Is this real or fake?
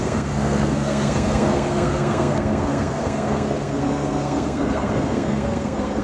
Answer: fake